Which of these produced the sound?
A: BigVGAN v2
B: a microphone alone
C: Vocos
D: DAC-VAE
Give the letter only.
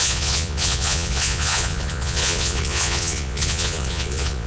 C